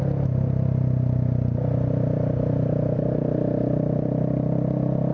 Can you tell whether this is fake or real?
real